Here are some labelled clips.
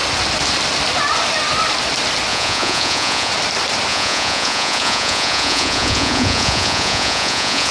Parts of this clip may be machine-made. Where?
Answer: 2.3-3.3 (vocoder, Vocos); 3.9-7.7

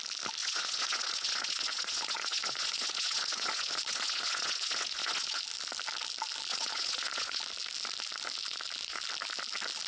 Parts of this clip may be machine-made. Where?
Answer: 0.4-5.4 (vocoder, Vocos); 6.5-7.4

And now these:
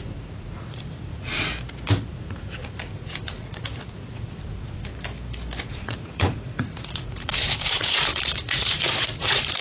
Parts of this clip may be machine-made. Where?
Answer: 0.0-1.5 (vocoder, Vocos); 2.1-4.9; 5.6-9.6

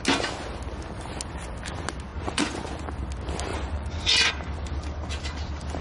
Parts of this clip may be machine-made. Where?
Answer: 2.1-2.7 (vocoder, Vocos); 3.5-4.3